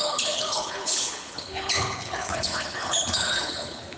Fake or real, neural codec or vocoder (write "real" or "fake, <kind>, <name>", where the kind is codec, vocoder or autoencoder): fake, codec, HILCodec